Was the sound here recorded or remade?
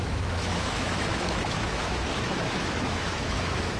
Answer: remade